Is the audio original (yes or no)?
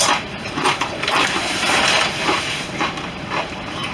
no